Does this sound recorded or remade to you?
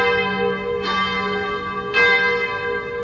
recorded